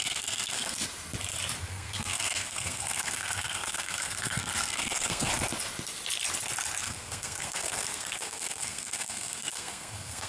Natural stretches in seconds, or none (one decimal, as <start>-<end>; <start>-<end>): 0.8-1.6; 5.3-6.8